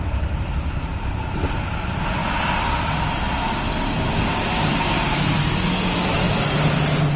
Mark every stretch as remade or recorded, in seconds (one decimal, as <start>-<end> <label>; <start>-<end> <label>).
0.0-2.2 remade; 2.2-6.5 recorded; 6.5-7.2 remade